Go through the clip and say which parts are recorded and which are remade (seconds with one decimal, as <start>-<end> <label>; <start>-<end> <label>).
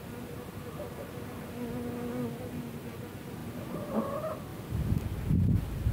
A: 0.0-5.9 recorded